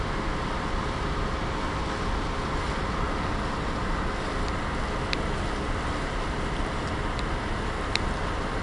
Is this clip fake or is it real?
real